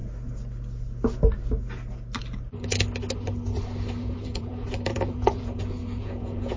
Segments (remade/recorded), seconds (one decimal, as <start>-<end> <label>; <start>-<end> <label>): 0.0-4.0 recorded; 4.0-6.6 remade